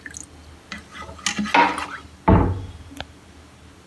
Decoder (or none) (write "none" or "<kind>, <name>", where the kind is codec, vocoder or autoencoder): none